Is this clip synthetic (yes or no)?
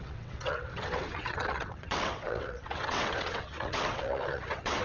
yes